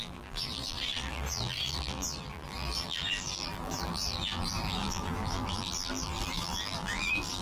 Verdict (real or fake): fake